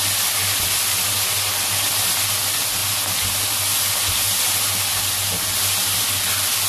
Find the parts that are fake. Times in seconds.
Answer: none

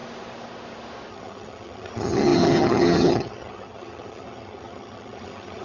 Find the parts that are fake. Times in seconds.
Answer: 1.1-5.6

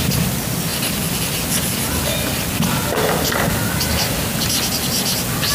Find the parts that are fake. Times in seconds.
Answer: none

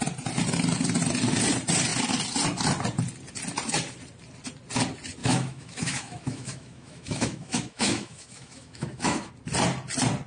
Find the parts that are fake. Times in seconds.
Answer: 5.2-9.3

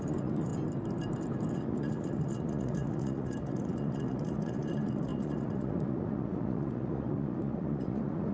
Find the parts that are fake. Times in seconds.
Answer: 0.0-0.5; 1.5-8.3